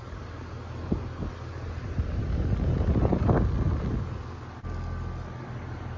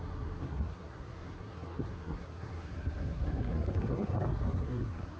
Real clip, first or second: first